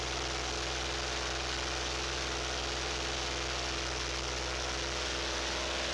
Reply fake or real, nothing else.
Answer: real